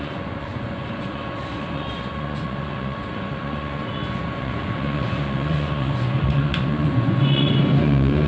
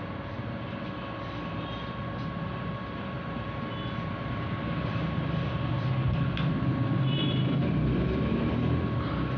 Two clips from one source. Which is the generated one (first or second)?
first